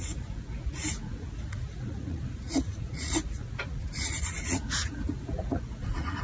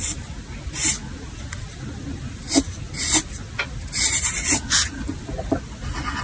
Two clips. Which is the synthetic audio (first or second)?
first